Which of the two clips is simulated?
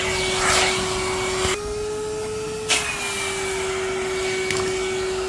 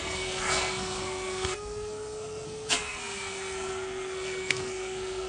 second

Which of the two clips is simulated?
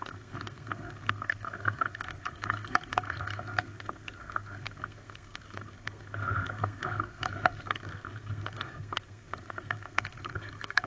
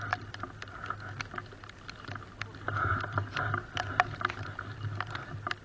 first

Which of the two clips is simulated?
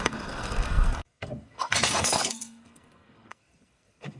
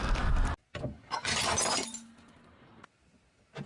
first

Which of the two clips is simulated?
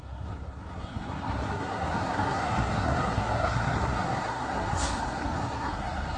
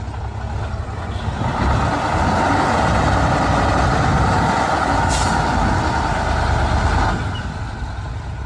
first